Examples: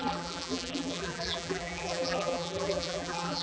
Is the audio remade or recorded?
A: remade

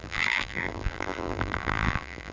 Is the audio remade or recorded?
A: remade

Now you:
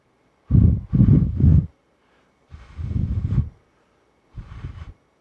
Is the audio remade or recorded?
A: remade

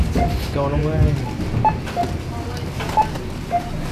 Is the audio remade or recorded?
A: recorded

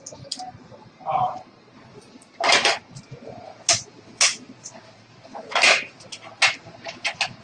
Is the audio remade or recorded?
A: remade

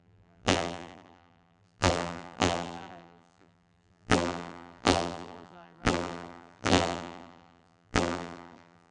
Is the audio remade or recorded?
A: remade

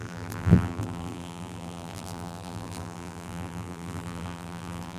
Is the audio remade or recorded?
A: remade